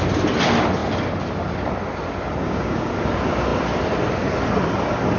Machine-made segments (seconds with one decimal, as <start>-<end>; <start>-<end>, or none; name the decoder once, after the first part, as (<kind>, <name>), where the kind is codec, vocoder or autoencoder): 2.4-2.9 (codec, DAC)